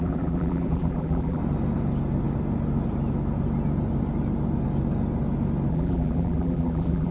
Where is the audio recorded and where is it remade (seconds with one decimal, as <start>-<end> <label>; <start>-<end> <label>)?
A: 0.0-1.4 remade; 1.4-5.7 recorded; 5.7-7.1 remade